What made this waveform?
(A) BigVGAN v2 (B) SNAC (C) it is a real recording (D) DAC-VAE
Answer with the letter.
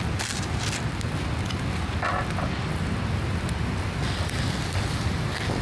C